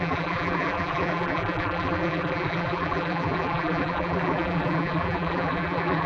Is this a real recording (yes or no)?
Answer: no